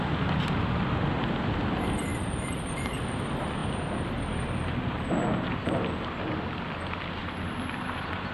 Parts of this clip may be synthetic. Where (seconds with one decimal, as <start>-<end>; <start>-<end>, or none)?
2.1-3.0; 3.6-5.8; 7.2-8.3